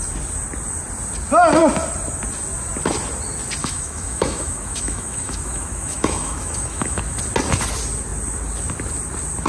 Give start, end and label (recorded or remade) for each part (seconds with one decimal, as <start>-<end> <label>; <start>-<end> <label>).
0.0-3.6 recorded; 3.6-7.0 remade; 7.0-9.5 recorded